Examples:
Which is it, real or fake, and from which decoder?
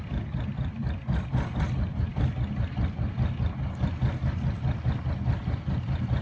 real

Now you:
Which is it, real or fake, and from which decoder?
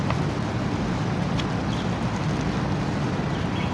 real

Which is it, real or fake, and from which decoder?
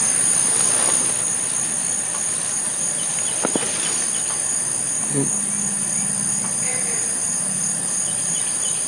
real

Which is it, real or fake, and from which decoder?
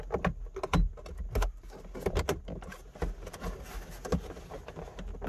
real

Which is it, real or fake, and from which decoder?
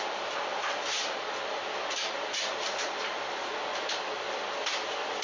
real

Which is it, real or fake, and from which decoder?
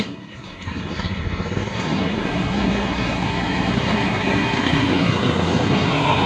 fake, codec, SNAC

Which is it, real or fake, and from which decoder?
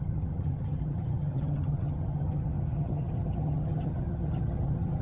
fake, vocoder, HiFi-GAN